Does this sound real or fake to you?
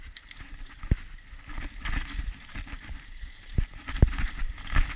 real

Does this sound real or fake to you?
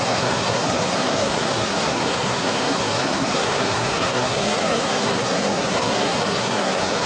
fake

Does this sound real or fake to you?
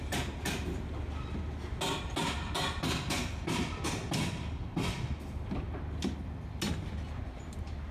real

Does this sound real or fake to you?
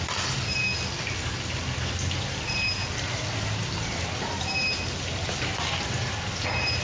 real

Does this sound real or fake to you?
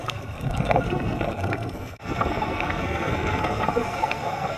fake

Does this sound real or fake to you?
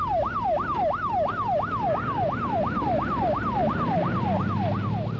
real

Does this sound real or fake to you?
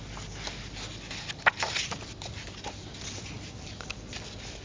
real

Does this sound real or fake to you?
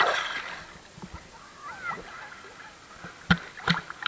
real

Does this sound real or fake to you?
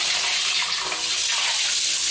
real